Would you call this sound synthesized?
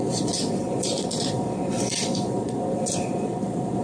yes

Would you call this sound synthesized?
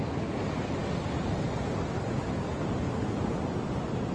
no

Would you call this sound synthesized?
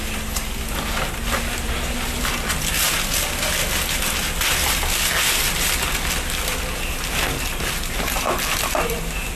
no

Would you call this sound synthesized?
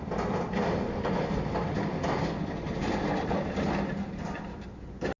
no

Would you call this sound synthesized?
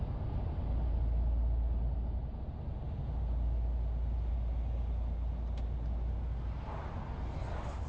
no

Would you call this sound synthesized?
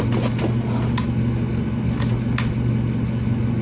no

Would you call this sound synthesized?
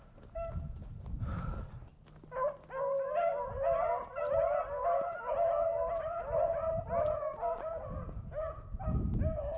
no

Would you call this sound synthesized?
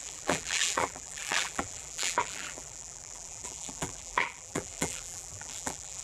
yes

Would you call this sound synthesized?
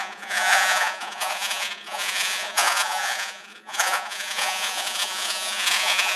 yes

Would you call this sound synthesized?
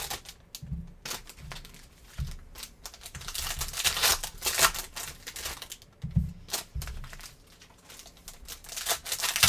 no